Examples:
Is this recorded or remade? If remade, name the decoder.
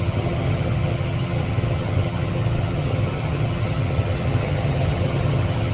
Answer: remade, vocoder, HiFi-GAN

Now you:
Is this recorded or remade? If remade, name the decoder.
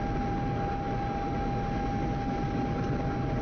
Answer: recorded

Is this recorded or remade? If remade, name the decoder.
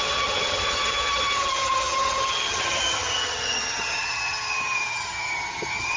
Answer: remade, vocoder, HiFi-GAN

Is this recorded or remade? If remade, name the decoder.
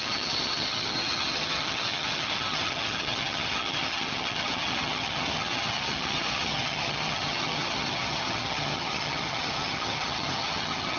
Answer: remade, vocoder, HiFi-GAN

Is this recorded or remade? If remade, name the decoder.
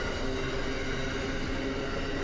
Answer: recorded